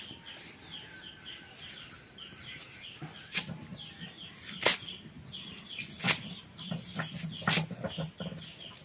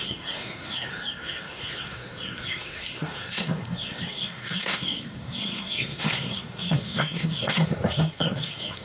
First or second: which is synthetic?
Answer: second